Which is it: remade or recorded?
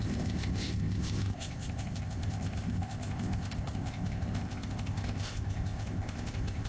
remade